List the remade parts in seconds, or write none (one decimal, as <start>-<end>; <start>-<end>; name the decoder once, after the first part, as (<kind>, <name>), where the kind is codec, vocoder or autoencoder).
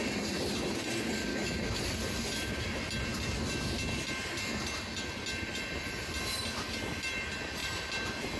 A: 1.3-1.8 (autoencoder, DAC-VAE)